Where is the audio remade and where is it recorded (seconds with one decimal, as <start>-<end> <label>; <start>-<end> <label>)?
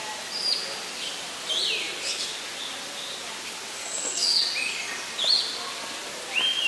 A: 0.0-3.8 recorded; 3.8-4.4 remade; 4.4-6.7 recorded